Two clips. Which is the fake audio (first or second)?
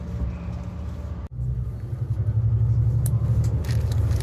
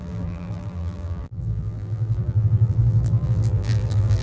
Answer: second